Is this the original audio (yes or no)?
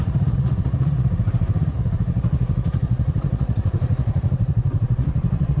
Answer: no